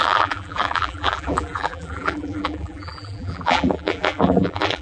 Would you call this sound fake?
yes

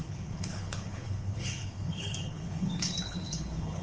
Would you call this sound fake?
yes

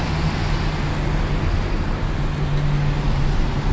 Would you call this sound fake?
no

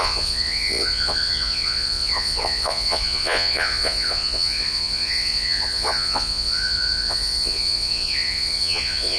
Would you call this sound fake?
yes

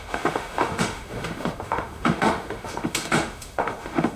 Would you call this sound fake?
yes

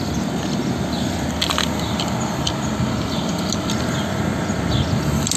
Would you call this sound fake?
no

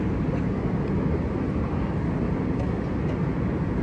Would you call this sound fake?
no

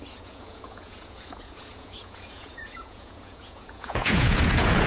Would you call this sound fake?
yes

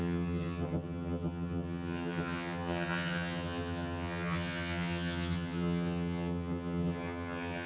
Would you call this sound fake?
yes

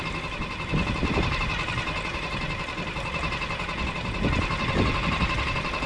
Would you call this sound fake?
no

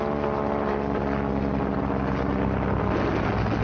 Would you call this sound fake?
no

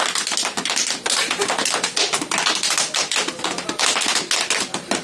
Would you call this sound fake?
no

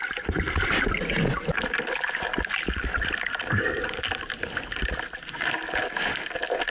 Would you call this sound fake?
no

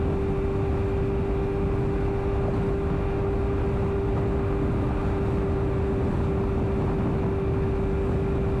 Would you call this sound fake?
no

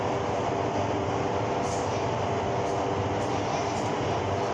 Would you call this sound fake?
no